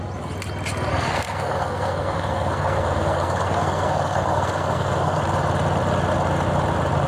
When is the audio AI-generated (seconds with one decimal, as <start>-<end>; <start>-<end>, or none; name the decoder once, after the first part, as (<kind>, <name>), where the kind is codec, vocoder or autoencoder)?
0.9-5.2 (codec, SNAC)